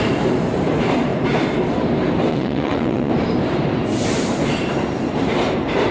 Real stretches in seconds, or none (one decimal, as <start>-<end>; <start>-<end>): 0.0-2.3; 3.1-5.9